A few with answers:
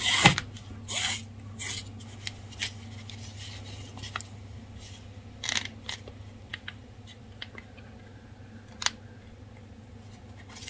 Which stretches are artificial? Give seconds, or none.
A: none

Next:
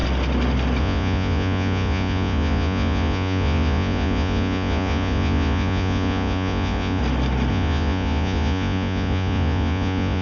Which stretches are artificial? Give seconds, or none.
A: 0.8-7.0 (vocoder, Vocos); 7.5-10.2

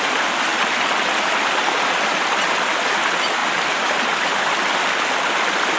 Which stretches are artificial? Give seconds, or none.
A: 0.0-0.5 (vocoder, BigVGAN v2); 2.5-5.8

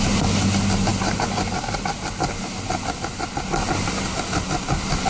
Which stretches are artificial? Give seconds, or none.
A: none

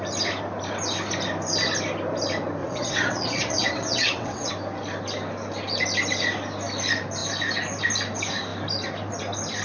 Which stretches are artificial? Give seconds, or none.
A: 2.6-4.5 (vocoder, WaveNeXt)

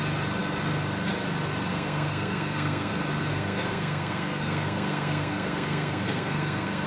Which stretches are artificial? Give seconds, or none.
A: 1.7-2.9 (codec, SNAC); 3.3-6.9

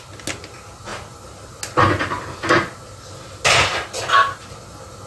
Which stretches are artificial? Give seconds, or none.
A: none

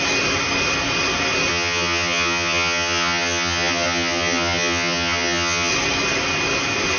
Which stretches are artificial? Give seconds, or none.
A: 1.5-5.7 (vocoder, HiFi-GAN)